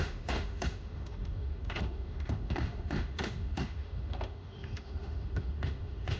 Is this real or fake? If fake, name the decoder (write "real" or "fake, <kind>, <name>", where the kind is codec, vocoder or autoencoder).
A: fake, autoencoder, DAC-VAE